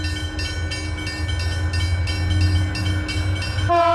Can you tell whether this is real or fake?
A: real